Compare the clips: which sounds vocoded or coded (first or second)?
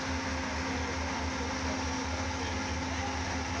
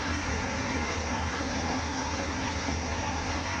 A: second